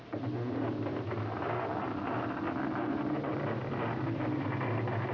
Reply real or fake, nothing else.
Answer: real